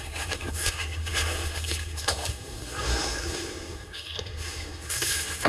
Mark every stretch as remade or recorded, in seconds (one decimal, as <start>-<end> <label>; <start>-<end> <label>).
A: 0.0-5.5 remade